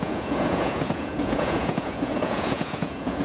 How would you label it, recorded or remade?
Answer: remade